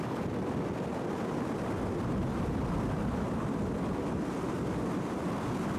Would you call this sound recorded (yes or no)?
yes